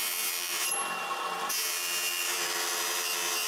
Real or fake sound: fake